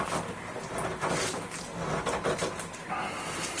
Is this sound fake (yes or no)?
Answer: no